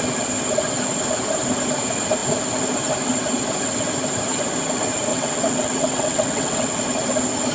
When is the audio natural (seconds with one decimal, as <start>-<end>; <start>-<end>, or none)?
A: 0.0-5.1; 6.8-7.5